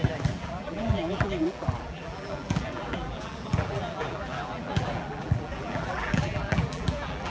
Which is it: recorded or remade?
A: remade